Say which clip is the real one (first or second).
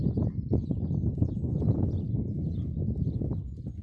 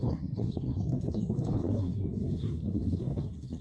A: first